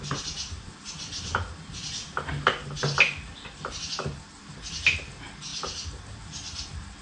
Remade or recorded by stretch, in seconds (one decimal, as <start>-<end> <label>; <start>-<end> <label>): 0.0-7.0 recorded